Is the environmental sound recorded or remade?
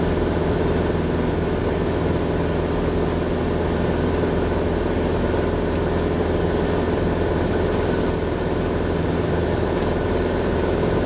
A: recorded